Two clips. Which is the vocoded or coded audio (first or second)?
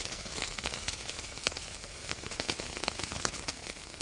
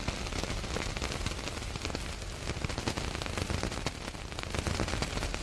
first